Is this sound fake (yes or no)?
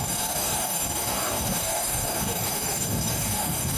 yes